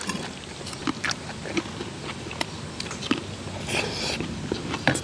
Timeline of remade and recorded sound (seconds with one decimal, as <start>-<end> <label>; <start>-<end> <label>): 0.0-5.0 recorded

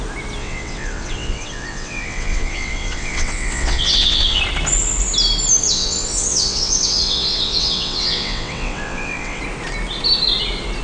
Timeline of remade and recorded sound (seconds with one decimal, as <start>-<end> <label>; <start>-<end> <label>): 0.0-0.4 recorded; 0.4-4.4 remade; 4.4-5.6 recorded; 5.6-9.4 remade; 9.4-10.8 recorded

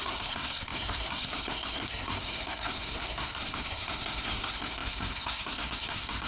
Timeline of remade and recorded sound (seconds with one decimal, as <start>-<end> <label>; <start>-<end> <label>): 0.0-6.3 remade

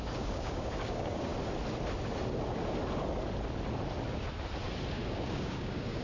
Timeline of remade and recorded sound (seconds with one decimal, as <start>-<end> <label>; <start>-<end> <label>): 0.0-1.3 remade; 1.3-4.9 recorded; 4.9-6.0 remade